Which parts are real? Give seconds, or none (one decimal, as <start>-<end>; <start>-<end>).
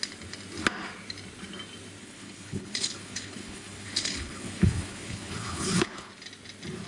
0.0-2.0; 6.1-6.9